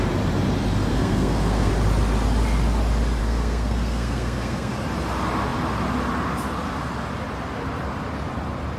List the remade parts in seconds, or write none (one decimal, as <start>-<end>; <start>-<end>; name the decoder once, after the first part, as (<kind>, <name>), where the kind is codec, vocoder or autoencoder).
0.9-1.7 (codec, SNAC); 3.2-4.7